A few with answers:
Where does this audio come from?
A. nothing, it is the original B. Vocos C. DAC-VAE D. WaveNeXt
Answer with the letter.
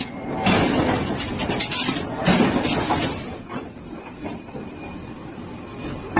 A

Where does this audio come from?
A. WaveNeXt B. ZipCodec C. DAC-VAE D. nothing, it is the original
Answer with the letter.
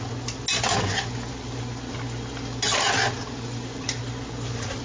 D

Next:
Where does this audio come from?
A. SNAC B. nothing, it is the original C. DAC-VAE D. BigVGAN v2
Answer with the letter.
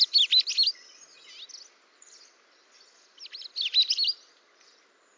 B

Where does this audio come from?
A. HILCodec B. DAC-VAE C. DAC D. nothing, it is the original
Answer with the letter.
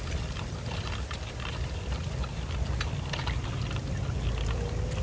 D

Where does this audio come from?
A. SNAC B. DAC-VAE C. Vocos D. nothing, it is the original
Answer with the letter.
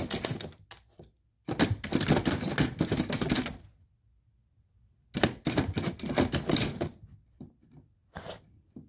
D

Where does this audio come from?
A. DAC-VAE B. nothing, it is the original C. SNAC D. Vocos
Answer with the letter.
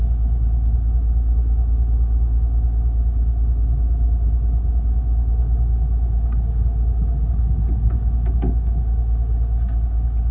B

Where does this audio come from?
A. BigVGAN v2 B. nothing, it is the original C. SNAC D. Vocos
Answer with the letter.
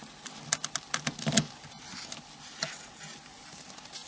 B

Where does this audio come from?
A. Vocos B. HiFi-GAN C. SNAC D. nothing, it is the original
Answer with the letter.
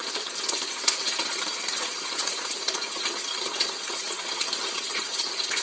A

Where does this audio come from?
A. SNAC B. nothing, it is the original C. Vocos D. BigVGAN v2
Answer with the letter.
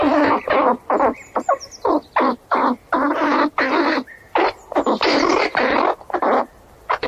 D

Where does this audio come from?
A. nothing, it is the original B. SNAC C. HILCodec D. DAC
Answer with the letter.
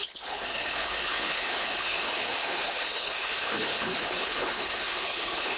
C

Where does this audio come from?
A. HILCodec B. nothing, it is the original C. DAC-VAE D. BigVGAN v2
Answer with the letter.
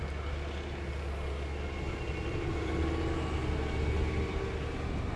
B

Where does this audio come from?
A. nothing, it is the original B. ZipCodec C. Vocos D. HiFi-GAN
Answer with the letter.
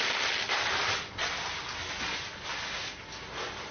A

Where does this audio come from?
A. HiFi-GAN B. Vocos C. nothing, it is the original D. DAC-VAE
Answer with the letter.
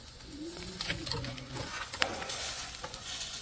B